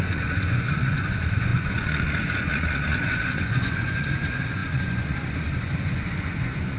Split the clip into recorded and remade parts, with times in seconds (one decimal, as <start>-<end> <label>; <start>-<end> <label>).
0.0-6.8 remade